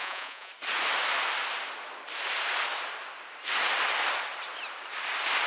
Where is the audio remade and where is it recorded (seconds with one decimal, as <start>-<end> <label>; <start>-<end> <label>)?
0.0-0.5 remade; 0.5-5.5 recorded